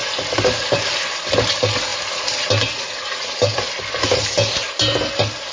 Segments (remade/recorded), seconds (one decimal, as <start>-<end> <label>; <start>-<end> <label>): 0.0-5.5 recorded

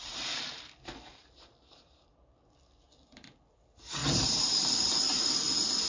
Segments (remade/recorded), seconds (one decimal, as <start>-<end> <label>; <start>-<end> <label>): 0.0-0.6 remade; 0.6-4.0 recorded; 4.0-4.9 remade; 4.9-5.9 recorded

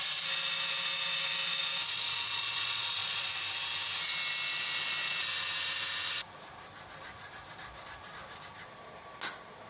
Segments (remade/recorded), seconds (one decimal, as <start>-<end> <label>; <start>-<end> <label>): 0.0-1.9 recorded; 1.9-3.3 remade; 3.3-9.7 recorded

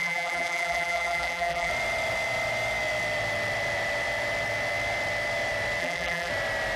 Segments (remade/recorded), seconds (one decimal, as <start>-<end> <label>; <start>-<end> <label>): 0.0-1.7 remade; 1.7-5.8 recorded; 5.8-6.3 remade; 6.3-6.8 recorded